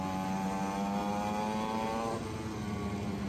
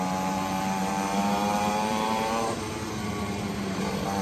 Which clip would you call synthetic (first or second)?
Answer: second